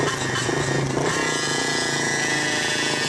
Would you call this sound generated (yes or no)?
no